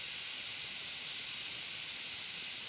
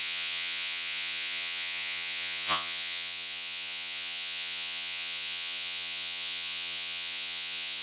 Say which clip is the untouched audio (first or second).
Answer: first